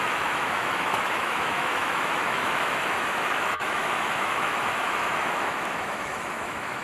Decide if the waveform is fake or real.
fake